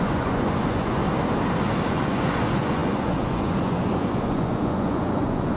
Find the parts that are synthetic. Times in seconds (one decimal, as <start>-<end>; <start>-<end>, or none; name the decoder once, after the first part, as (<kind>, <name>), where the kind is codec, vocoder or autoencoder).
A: 0.0-1.0 (vocoder, Vocos); 1.9-5.6